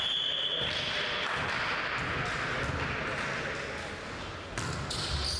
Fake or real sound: real